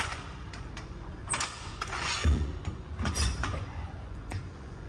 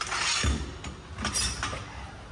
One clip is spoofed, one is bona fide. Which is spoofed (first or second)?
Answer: first